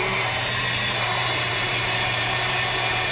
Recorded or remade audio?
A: remade